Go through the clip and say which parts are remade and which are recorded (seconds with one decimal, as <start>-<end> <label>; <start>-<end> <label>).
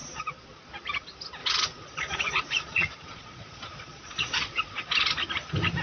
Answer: 0.0-0.7 remade; 0.7-1.4 recorded; 1.4-4.9 remade; 4.9-5.8 recorded